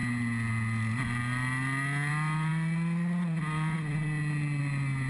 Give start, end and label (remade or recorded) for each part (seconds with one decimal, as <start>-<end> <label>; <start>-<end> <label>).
0.0-5.1 recorded